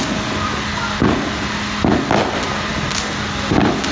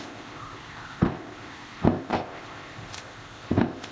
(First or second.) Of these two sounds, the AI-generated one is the second